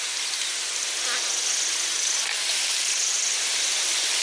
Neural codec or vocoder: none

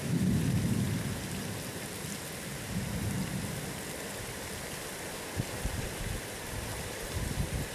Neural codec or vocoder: vocoder, BigVGAN v2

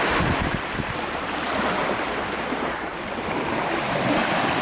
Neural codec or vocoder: vocoder, BigVGAN v2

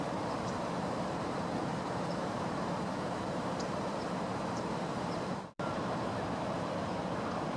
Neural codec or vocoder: vocoder, BigVGAN v2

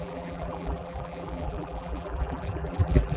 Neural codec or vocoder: vocoder, BigVGAN v2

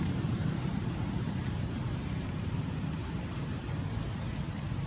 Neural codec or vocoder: vocoder, BigVGAN v2